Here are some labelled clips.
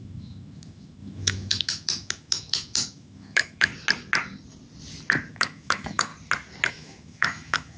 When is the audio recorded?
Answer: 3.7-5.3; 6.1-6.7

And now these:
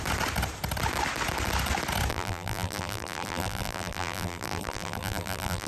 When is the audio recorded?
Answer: 0.0-2.1

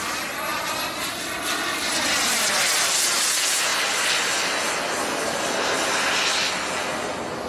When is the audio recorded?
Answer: 0.0-7.5

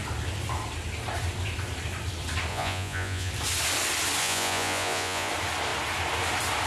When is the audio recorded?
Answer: 0.0-2.5; 3.3-4.2; 5.3-6.7

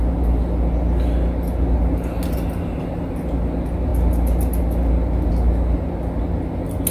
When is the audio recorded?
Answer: 0.0-6.9

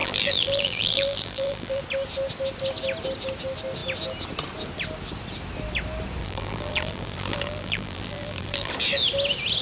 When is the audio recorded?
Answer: 1.8-6.2; 8.7-9.6

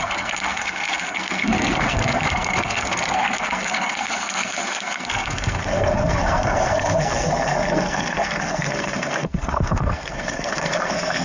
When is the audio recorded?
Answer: none

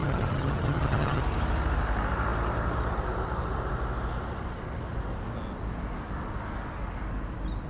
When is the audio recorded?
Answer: 1.2-7.7